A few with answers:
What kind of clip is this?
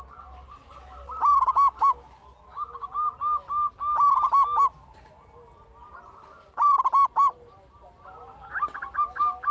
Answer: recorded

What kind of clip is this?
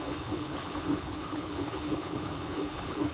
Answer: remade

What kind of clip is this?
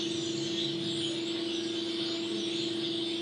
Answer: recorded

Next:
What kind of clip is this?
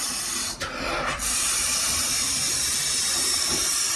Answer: recorded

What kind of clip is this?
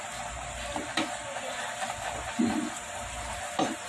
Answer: recorded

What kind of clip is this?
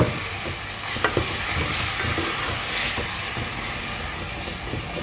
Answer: recorded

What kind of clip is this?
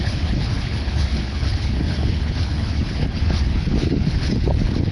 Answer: remade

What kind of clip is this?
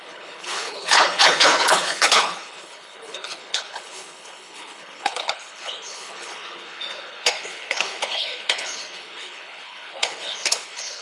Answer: remade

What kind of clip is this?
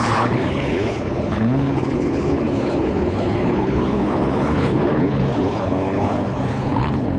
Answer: remade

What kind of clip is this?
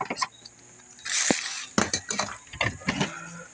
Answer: recorded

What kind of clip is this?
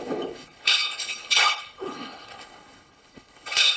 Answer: remade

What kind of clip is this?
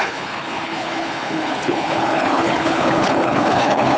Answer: remade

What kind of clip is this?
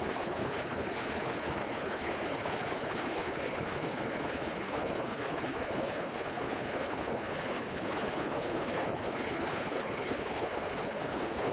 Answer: remade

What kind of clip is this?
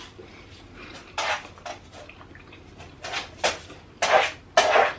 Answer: recorded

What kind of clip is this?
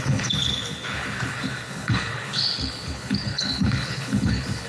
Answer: remade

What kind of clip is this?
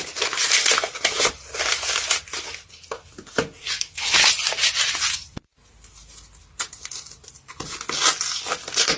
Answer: recorded